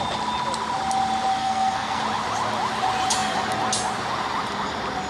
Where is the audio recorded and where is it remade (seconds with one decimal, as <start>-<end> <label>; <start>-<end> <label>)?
0.0-1.4 recorded; 1.4-2.0 remade; 2.0-5.1 recorded